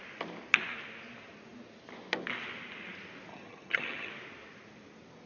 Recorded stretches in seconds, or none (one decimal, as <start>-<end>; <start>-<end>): 0.0-3.3; 4.1-5.3